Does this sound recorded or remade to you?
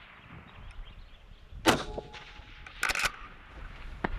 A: recorded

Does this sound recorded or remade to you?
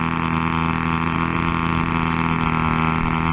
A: recorded